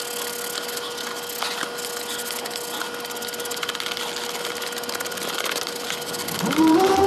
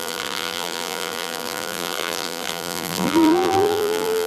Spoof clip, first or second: second